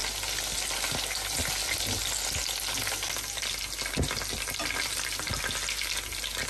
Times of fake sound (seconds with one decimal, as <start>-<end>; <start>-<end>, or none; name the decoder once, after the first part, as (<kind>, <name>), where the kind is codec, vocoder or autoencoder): none